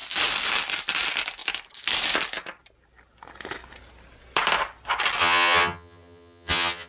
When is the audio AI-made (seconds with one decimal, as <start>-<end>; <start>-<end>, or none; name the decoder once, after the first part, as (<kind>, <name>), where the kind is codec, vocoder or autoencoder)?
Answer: 5.2-6.9 (vocoder, HiFi-GAN)